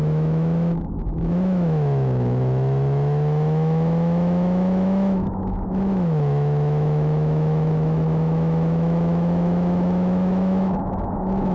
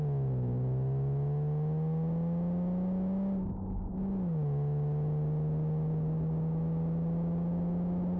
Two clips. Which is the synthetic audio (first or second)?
first